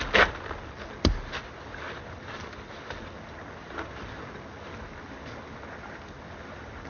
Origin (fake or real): real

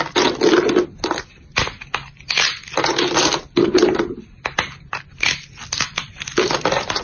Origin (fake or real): real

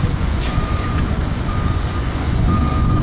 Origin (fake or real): fake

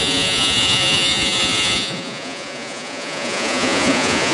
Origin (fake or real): fake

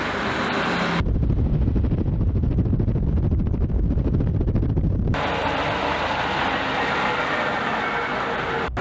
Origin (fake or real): real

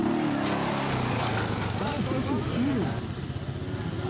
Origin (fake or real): real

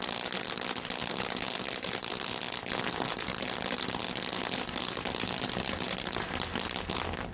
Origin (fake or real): real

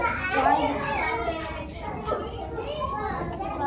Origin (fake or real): real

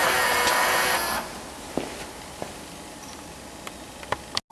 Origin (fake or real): real